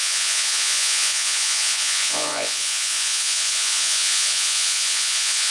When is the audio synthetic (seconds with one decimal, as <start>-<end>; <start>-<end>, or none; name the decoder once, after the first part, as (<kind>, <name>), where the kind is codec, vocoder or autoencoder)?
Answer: 0.0-5.5 (vocoder, Vocos)